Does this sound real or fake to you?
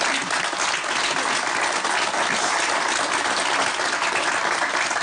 real